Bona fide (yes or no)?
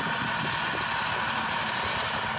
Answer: yes